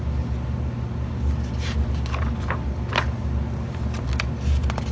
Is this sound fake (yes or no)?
no